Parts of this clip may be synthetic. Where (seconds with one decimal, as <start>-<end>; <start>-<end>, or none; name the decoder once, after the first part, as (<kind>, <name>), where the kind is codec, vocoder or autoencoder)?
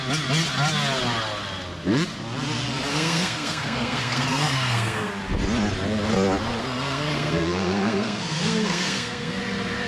2.9-5.1 (codec, SNAC); 6.6-9.4